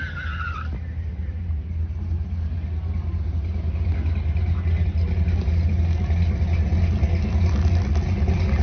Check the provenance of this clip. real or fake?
real